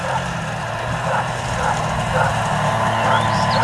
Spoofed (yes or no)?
no